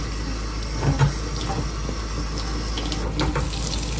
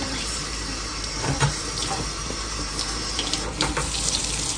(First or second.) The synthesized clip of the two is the second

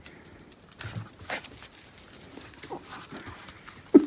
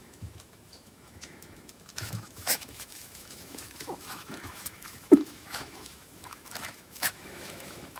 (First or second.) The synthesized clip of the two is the second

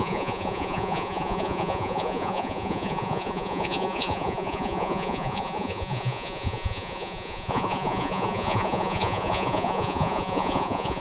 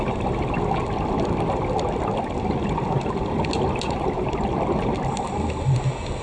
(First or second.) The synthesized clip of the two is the first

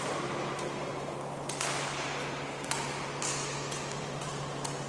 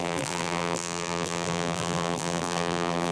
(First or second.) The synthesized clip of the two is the second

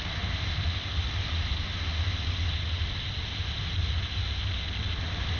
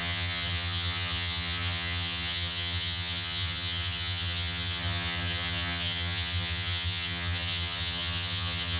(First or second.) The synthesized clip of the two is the second